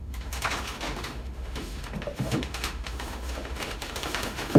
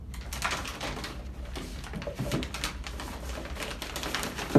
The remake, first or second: first